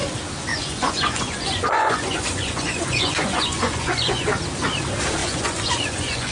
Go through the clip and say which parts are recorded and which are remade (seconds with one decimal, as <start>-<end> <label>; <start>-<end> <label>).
0.0-0.5 recorded; 0.5-4.3 remade; 4.3-5.2 recorded; 5.2-6.3 remade